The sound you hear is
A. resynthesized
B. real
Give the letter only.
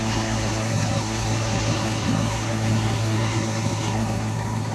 A